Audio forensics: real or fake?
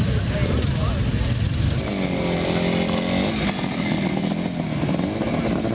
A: real